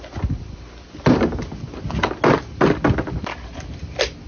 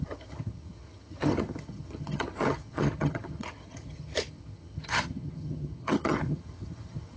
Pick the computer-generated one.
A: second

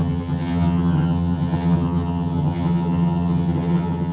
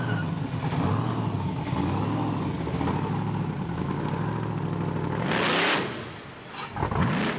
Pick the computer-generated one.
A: first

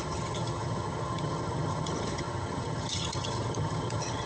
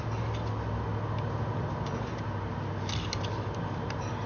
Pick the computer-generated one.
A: first